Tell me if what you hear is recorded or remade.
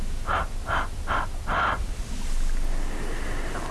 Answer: recorded